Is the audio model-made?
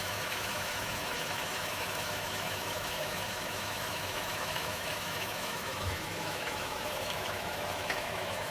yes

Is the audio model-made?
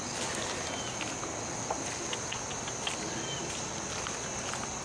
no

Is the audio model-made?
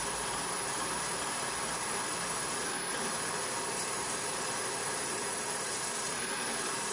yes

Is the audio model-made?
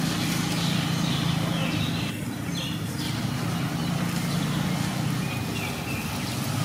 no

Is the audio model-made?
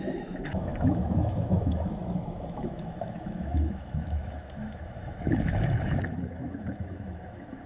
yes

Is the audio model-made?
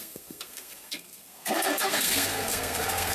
yes